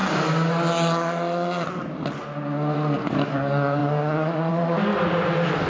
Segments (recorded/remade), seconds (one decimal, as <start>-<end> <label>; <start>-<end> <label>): 0.0-3.1 recorded; 3.1-4.9 remade; 4.9-5.7 recorded